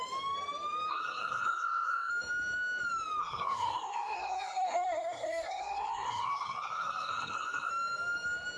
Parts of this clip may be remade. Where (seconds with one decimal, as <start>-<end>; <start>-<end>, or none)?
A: 0.9-2.1; 3.2-7.7

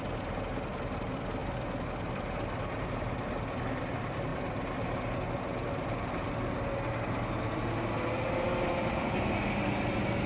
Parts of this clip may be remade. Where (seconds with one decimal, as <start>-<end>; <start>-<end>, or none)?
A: none

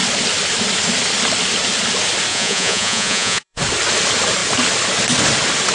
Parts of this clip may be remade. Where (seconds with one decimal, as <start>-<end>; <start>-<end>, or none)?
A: 2.3-3.6